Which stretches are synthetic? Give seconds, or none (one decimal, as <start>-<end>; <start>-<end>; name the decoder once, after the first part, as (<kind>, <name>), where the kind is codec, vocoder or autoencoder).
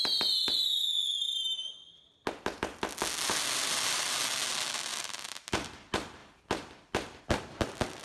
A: none